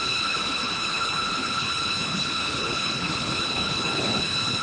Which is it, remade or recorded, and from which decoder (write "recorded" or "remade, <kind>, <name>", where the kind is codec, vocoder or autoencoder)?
remade, codec, HILCodec